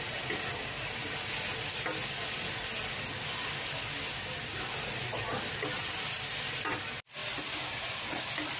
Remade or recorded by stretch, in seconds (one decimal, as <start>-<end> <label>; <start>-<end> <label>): 0.0-4.5 recorded; 4.5-6.4 remade; 6.4-7.2 recorded; 7.2-7.8 remade; 7.8-8.6 recorded

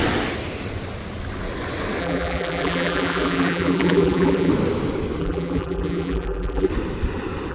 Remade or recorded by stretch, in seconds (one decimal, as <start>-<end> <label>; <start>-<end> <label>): 0.0-2.0 recorded; 2.0-4.5 remade; 4.5-5.2 recorded; 5.2-6.7 remade; 6.7-7.5 recorded

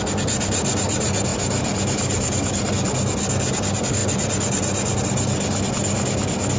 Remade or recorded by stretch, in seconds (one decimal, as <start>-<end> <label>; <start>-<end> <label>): 0.0-1.3 recorded; 1.3-2.7 remade; 2.7-6.6 recorded

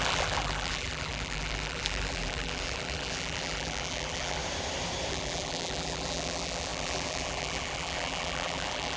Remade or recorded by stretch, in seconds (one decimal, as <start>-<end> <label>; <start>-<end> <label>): 0.0-4.4 remade; 4.4-5.1 recorded; 5.1-9.0 remade

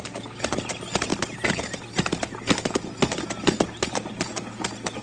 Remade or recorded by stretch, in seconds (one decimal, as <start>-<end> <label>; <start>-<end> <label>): 0.0-5.0 recorded

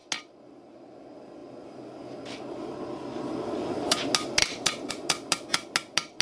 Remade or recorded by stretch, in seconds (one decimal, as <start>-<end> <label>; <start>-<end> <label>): 0.0-4.4 recorded; 4.4-4.9 remade; 4.9-6.2 recorded

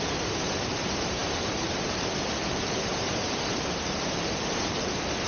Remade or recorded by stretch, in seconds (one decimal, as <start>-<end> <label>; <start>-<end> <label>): 0.0-5.3 remade

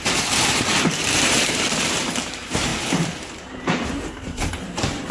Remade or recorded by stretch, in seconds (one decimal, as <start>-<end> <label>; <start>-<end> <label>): 0.0-5.1 remade